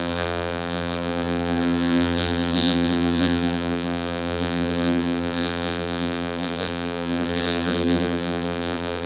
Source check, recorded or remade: remade